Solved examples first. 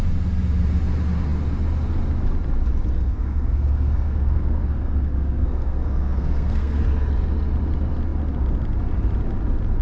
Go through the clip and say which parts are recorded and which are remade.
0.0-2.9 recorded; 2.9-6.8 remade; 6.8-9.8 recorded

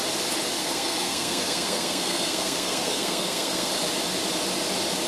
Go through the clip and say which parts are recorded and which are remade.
0.0-0.6 recorded; 0.6-3.7 remade; 3.7-5.1 recorded

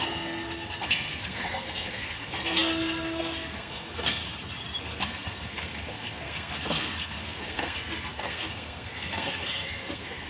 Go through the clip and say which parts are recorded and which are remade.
0.0-4.2 remade; 4.2-4.8 recorded; 4.8-10.3 remade

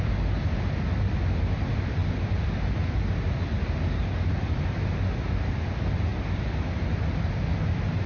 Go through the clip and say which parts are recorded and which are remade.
0.0-8.1 recorded

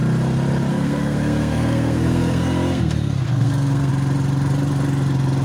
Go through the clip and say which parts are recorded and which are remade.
0.0-0.7 recorded; 0.7-3.9 remade; 3.9-5.4 recorded

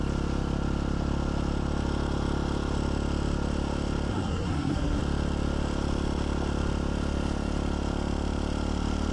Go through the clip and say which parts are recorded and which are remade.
0.0-4.1 recorded; 4.1-5.0 remade; 5.0-9.1 recorded